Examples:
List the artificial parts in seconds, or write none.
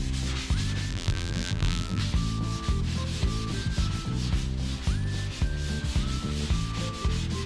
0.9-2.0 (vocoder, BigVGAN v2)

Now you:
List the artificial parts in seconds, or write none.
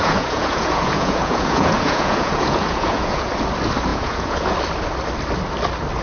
0.0-3.3 (vocoder, Vocos); 3.9-4.5